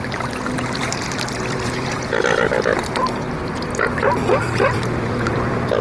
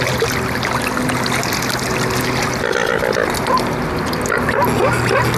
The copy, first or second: first